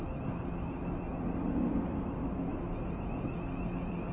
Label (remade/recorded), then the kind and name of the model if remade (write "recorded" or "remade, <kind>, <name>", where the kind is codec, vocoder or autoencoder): recorded